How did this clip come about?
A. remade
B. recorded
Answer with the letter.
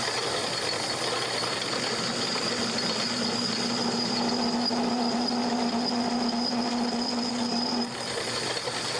B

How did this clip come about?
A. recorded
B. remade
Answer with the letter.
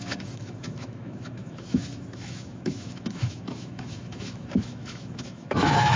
B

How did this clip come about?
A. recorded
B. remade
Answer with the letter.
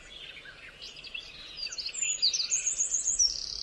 A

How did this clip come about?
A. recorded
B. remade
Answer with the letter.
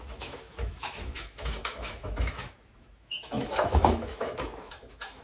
B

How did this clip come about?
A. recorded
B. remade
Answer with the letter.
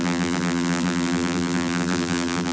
B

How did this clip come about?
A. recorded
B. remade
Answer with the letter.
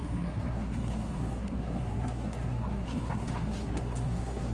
B